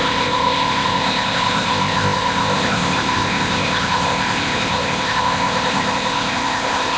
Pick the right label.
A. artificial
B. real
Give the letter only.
A